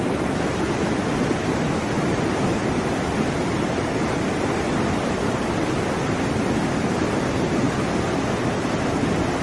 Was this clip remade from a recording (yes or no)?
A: no